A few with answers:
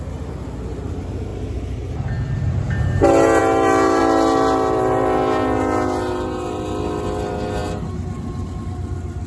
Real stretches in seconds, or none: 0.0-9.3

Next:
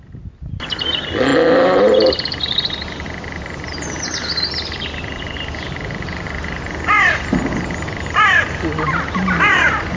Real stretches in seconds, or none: 0.0-10.0

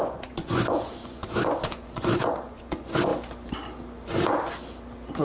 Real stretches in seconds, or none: 3.1-5.2

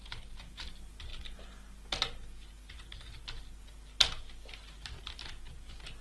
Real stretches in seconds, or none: 0.0-6.0

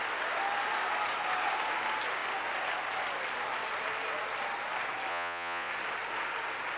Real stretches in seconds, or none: 0.0-5.1; 5.7-6.8

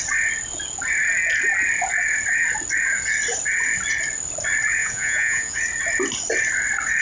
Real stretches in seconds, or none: 0.0-4.8; 5.6-7.0

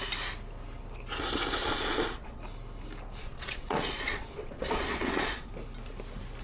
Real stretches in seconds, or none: 0.0-1.6; 2.4-3.2; 5.5-6.4